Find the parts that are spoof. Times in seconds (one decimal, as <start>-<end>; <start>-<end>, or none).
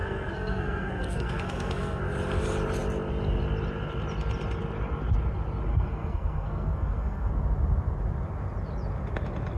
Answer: 0.0-2.0; 5.7-7.3